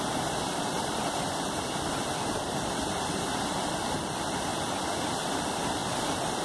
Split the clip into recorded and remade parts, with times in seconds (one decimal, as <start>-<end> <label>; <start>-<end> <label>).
0.0-4.5 remade; 4.5-5.2 recorded; 5.2-5.8 remade; 5.8-6.4 recorded